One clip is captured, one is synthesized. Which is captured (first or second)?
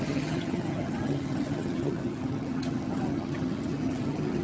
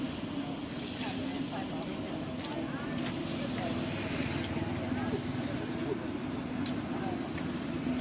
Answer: second